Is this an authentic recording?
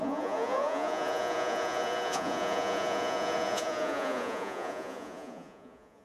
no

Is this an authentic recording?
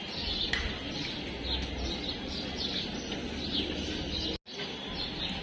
yes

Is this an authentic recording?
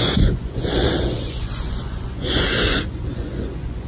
no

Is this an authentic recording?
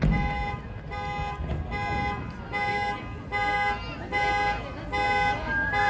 yes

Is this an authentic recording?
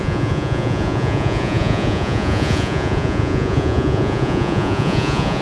no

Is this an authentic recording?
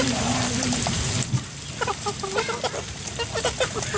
yes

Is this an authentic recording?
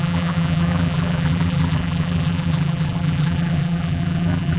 no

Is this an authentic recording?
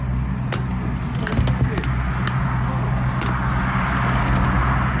yes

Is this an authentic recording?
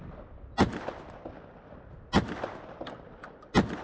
yes